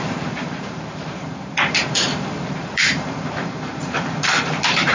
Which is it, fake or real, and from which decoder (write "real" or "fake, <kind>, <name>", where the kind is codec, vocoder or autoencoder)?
fake, vocoder, BigVGAN v2